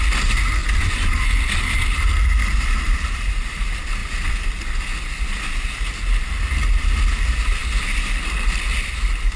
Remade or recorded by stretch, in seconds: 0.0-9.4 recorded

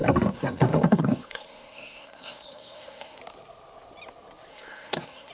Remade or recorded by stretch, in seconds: 0.0-3.2 remade; 3.2-4.5 recorded; 4.5-5.3 remade

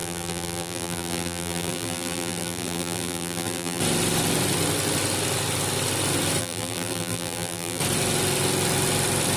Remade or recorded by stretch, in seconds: 0.0-3.8 remade; 3.8-6.4 recorded; 6.4-7.8 remade; 7.8-9.4 recorded

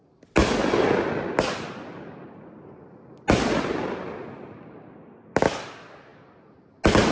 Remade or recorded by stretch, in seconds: 0.0-7.1 recorded

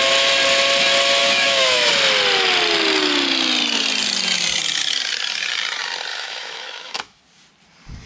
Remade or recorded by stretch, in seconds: 0.0-1.2 recorded; 1.2-1.9 remade; 1.9-6.1 recorded; 6.1-7.2 remade; 7.2-8.1 recorded

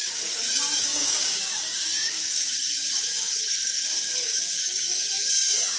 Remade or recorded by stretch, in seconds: 0.0-5.8 remade